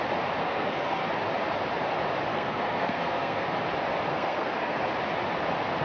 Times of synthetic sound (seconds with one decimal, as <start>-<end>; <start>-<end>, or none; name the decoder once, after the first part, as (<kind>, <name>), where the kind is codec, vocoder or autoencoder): 0.4-1.1 (codec, SNAC); 2.3-3.5; 4.1-4.8